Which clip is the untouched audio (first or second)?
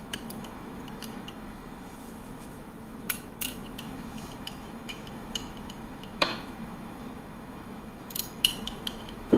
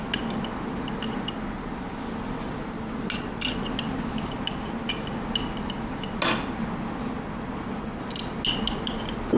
second